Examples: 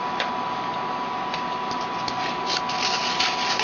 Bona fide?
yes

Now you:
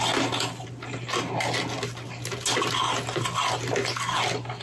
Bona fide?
yes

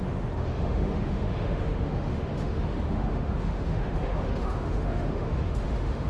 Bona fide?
no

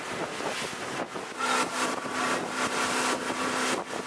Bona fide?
yes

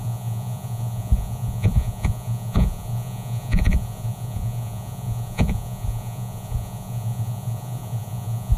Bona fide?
no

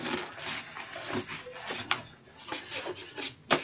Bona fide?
yes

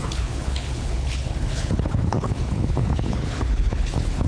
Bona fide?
no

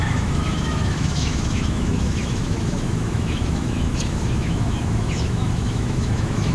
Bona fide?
no